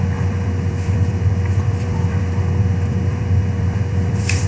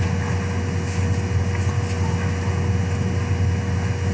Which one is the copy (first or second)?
first